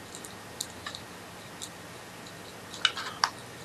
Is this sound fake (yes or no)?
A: no